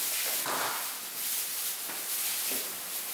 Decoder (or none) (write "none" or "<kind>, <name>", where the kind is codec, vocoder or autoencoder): none